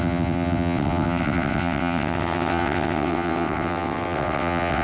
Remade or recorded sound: remade